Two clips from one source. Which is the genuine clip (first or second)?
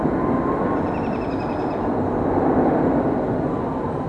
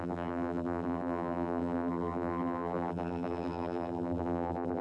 first